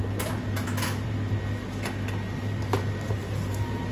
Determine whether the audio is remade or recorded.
recorded